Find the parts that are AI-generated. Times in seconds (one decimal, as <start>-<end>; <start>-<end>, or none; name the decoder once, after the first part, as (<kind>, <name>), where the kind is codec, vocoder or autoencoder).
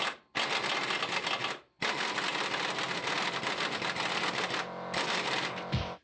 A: none